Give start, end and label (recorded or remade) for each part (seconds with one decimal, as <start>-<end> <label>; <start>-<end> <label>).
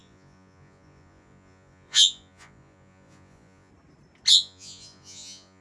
0.0-3.7 remade; 3.7-4.3 recorded; 4.3-5.6 remade